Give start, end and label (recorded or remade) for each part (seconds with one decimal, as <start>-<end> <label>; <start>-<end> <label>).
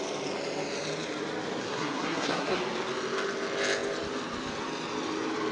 0.0-1.6 recorded; 1.6-2.6 remade; 2.6-5.5 recorded